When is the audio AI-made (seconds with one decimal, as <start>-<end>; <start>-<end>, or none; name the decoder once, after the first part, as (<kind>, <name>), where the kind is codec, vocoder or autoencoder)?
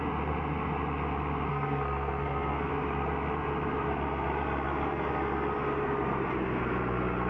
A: 1.5-2.7 (codec, SNAC)